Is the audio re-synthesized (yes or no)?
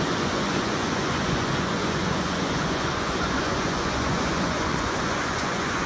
yes